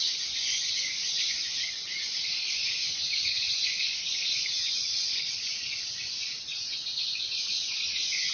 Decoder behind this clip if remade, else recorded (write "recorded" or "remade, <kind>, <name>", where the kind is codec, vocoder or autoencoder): remade, vocoder, Vocos